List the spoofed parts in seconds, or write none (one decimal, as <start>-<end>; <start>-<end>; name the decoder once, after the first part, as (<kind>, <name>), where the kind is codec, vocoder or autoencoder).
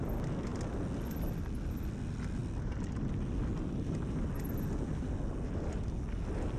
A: none